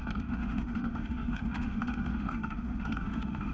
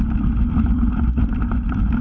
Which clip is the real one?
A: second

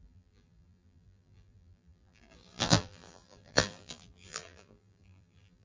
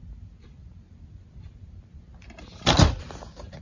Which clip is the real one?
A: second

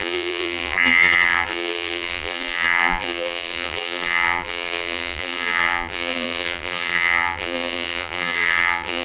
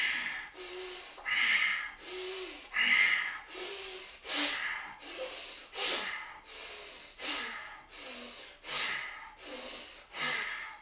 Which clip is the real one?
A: second